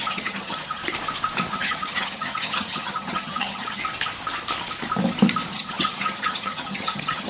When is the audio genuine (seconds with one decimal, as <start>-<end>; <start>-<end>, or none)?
0.8-1.5; 3.8-5.5